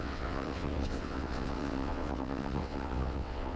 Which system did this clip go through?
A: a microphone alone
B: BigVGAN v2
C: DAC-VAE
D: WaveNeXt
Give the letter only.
D